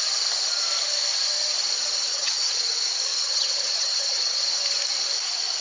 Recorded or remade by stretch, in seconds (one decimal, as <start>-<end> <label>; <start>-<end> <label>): 0.0-2.1 recorded; 2.1-2.7 remade; 2.7-3.1 recorded; 3.1-4.4 remade; 4.4-5.6 recorded